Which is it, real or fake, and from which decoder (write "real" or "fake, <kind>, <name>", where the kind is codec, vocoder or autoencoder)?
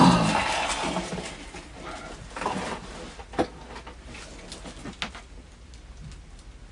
real